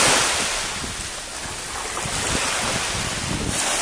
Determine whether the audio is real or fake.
real